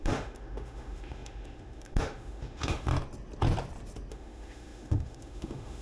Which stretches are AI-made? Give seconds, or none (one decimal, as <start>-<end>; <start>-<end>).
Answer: 0.0-2.9; 4.1-5.8